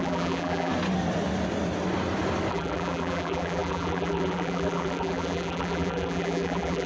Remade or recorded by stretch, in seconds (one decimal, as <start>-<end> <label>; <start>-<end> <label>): 0.0-0.7 remade; 0.7-2.5 recorded; 2.5-6.9 remade